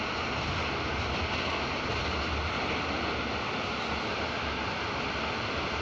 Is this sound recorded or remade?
recorded